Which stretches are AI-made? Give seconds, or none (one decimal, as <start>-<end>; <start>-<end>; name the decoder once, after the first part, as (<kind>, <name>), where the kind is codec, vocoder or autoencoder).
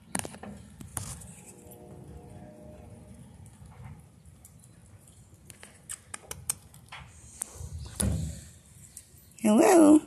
none